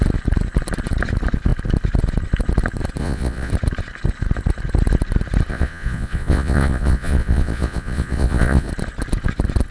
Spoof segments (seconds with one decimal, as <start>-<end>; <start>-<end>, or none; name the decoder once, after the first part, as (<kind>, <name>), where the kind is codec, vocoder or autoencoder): 3.0-3.5 (vocoder, Vocos); 5.5-8.7